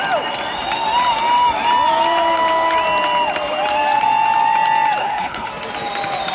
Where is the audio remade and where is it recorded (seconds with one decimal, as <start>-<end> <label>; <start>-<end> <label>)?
0.0-5.0 recorded; 5.0-5.5 remade; 5.5-6.3 recorded